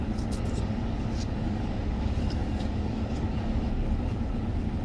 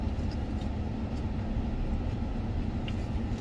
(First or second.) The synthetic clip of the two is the first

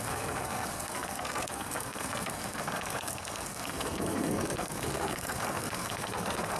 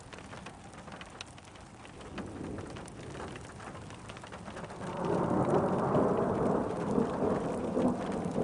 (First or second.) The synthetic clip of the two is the first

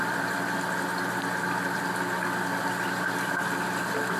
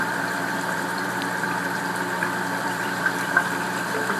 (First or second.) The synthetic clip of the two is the second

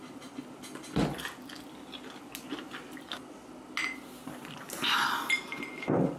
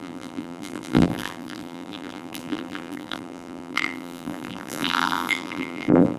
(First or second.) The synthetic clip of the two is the second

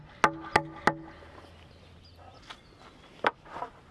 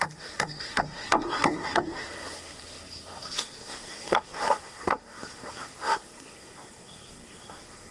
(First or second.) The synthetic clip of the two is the second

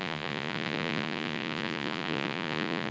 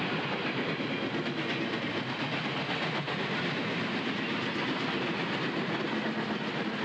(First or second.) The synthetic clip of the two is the first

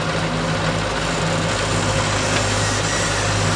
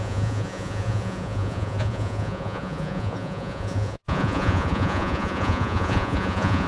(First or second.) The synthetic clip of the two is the second